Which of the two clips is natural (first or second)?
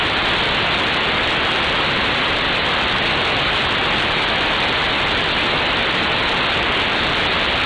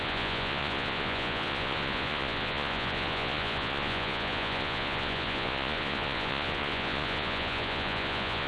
first